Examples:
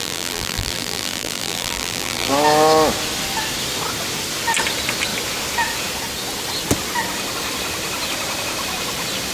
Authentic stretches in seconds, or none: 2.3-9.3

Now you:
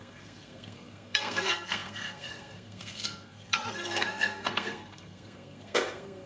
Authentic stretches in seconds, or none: none

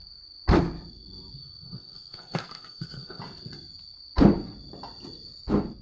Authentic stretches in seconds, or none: 0.0-1.4; 3.2-5.8

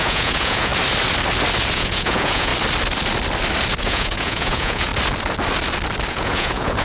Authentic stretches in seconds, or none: 0.7-1.7; 2.5-3.8; 4.9-6.1

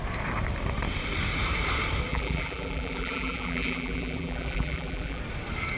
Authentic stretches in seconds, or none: 0.0-2.1; 5.2-5.8

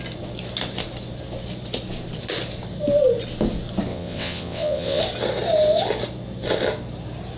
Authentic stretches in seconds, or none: 0.0-3.9; 5.0-7.4

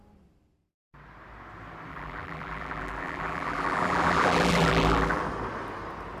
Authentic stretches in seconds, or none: 0.0-1.9; 5.2-6.2

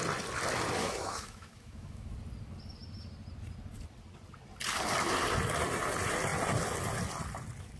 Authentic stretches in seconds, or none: 0.0-0.8; 2.1-7.8